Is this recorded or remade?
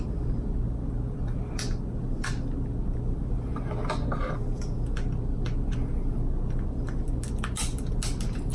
recorded